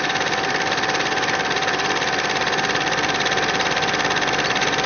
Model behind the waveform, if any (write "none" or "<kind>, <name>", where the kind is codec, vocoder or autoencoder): vocoder, BigVGAN v2